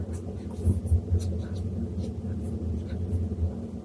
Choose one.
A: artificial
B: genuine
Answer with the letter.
B